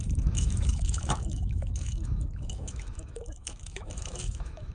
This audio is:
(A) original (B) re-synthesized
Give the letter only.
B